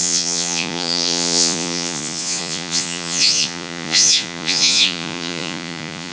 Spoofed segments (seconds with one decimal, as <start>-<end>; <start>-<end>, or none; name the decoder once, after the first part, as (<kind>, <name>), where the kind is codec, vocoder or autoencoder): 0.0-6.1 (vocoder, Vocos)